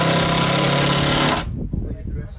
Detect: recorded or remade recorded